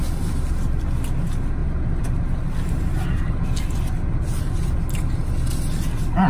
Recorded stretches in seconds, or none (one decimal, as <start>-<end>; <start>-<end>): 0.0-6.3